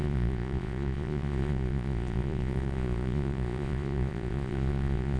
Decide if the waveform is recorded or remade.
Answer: remade